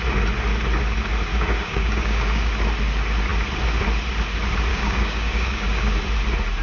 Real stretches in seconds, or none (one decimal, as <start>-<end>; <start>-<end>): 0.0-1.3; 2.4-4.7; 5.9-6.6